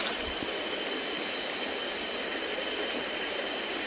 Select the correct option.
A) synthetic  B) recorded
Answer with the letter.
B